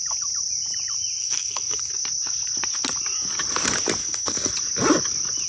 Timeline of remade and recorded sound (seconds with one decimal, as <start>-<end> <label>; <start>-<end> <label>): 0.0-1.2 recorded; 1.2-1.9 remade; 1.9-4.0 recorded; 4.0-4.5 remade; 4.5-5.5 recorded